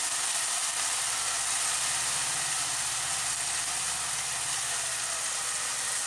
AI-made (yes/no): no